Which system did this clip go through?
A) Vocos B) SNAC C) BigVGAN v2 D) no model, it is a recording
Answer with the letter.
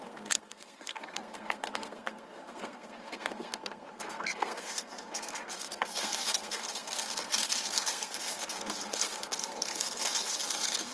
B